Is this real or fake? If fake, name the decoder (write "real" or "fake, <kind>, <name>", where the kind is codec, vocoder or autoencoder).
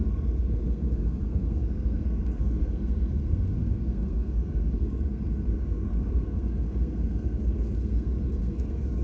fake, codec, SNAC